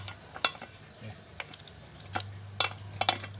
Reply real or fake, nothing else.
real